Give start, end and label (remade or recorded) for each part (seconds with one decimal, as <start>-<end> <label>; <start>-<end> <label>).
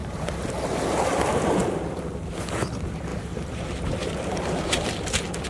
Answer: 0.0-0.5 remade; 0.5-3.1 recorded; 3.1-4.9 remade; 4.9-5.5 recorded